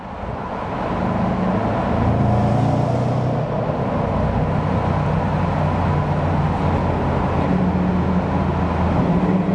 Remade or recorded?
recorded